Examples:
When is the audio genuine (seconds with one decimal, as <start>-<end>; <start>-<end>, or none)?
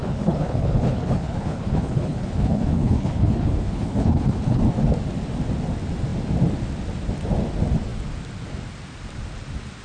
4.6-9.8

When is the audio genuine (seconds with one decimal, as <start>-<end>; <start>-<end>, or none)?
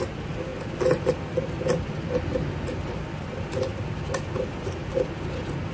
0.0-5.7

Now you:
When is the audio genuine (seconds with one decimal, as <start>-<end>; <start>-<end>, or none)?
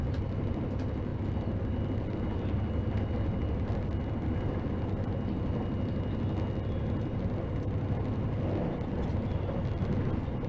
0.0-10.5